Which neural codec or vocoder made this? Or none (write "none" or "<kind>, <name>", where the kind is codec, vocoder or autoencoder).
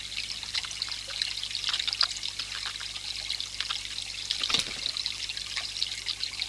none